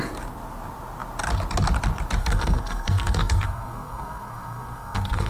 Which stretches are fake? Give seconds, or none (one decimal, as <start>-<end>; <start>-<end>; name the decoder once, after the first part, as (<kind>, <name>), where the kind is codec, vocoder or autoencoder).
2.2-5.3 (codec, SNAC)

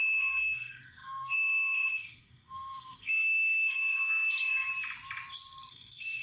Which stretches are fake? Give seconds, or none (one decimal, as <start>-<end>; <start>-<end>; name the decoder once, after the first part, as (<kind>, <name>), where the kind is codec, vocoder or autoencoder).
0.0-4.7 (codec, SNAC); 5.7-6.2